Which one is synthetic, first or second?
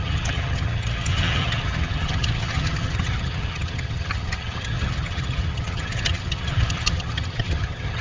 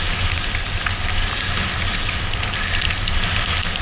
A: first